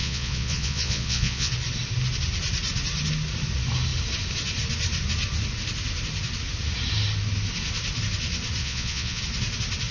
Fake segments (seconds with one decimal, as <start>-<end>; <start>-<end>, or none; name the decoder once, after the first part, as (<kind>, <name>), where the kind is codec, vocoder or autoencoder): 0.0-1.5 (vocoder, Vocos); 8.6-9.2

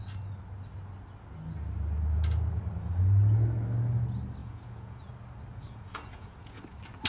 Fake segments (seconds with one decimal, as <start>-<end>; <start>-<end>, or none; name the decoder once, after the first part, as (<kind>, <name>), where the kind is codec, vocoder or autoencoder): 4.4-5.1 (vocoder, Vocos); 5.5-6.6